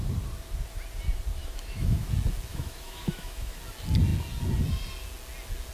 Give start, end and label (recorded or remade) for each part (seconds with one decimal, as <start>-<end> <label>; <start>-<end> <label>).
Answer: 0.0-1.4 recorded; 1.4-2.1 remade; 2.1-2.5 recorded; 2.5-3.6 remade; 3.6-5.7 recorded